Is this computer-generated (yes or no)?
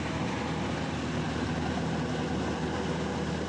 no